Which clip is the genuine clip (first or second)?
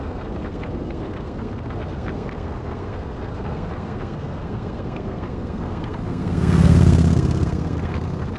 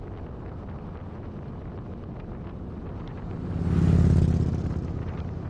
second